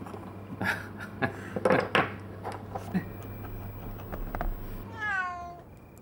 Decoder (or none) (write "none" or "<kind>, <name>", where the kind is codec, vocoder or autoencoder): none